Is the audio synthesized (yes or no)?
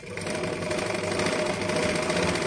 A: no